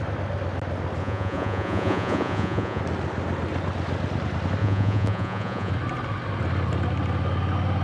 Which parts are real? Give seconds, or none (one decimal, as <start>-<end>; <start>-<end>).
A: 0.0-1.0; 2.8-4.6; 5.7-7.8